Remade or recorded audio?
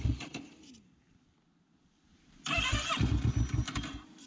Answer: recorded